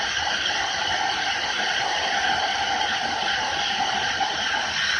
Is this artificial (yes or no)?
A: no